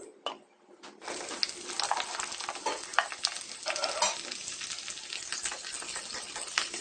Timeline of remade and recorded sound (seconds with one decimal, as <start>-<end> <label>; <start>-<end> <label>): 0.0-6.8 recorded